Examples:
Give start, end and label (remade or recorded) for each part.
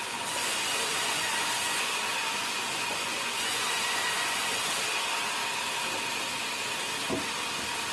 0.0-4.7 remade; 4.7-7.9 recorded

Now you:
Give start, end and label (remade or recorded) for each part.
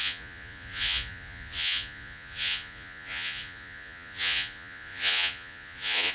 0.0-6.1 remade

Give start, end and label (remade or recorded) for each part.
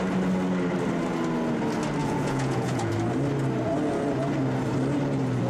0.0-2.0 recorded; 2.0-2.9 remade; 2.9-5.5 recorded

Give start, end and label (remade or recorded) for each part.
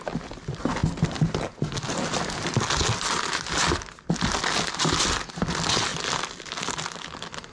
0.0-7.5 recorded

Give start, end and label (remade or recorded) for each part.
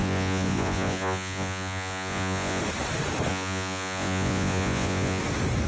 0.0-2.6 remade; 2.6-3.3 recorded; 3.3-5.2 remade; 5.2-5.7 recorded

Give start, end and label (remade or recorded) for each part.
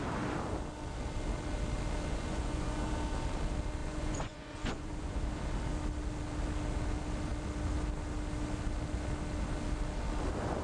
0.0-2.1 recorded; 2.1-2.9 remade; 2.9-3.8 recorded; 3.8-5.2 remade; 5.2-10.6 recorded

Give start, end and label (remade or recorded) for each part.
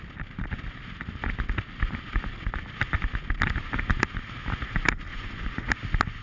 0.0-5.1 recorded; 5.1-5.7 remade; 5.7-6.2 recorded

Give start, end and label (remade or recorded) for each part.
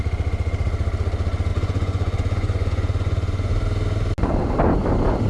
0.0-1.5 recorded; 1.5-3.5 remade; 3.5-5.3 recorded